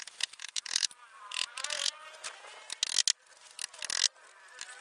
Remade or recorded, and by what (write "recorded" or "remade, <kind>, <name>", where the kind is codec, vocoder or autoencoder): recorded